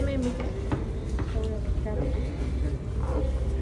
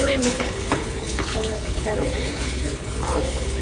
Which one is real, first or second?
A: first